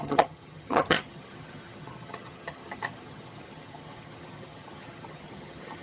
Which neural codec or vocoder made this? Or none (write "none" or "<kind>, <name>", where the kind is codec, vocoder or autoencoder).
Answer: vocoder, HiFi-GAN